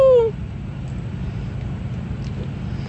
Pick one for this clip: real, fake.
real